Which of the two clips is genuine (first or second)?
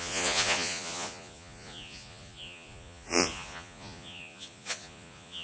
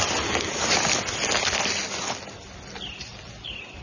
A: second